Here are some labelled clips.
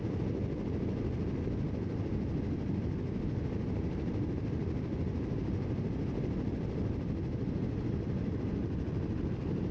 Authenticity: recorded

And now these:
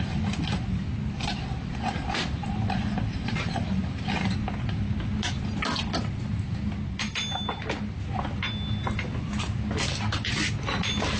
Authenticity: recorded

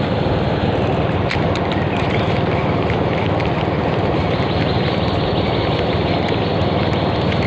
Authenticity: recorded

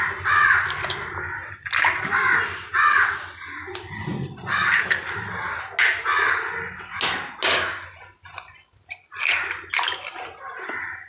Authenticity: recorded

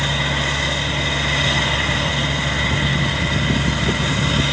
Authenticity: recorded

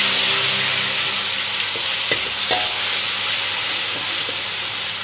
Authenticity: recorded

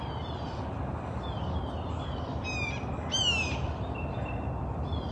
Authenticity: recorded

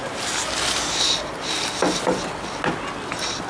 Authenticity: recorded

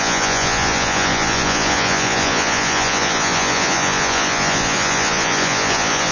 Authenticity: remade